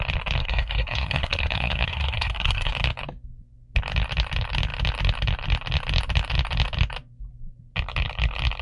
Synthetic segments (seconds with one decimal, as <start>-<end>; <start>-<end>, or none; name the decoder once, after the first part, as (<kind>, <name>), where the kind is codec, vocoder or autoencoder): 0.4-2.7 (codec, SNAC)

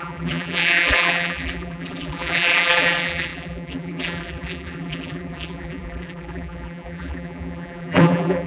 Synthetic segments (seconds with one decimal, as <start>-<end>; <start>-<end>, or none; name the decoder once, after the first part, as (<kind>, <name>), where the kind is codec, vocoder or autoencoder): 0.0-8.5 (vocoder, BigVGAN v2)